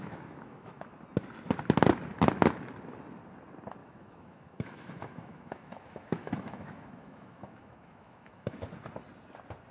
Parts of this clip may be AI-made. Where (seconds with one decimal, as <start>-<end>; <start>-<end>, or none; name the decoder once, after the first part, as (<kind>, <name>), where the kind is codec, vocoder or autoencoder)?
0.0-0.9 (autoencoder, DAC-VAE); 3.8-8.6